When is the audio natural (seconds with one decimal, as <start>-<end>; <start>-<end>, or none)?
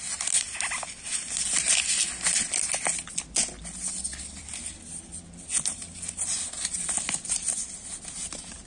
0.0-8.7